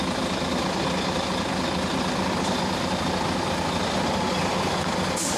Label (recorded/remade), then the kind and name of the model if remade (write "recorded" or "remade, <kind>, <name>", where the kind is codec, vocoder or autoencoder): recorded